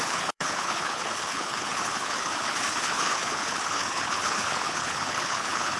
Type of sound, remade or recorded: remade